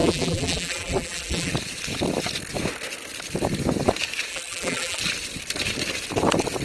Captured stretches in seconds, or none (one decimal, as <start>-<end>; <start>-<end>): 1.5-4.3; 5.0-6.6